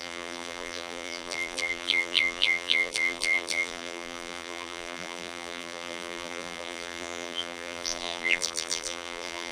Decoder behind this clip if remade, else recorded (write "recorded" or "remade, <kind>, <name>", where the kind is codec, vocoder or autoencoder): remade, vocoder, BigVGAN v2